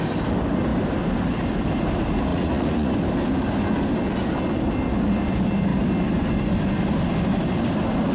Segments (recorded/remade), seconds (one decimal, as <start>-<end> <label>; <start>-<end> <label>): 0.0-2.3 recorded; 2.3-2.9 remade; 2.9-8.1 recorded